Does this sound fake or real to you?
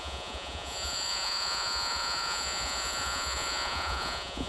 fake